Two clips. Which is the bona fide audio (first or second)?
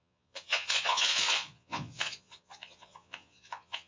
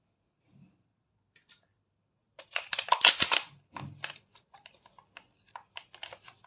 second